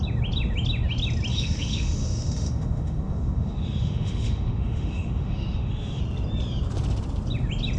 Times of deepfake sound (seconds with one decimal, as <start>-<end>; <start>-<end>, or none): 1.3-6.0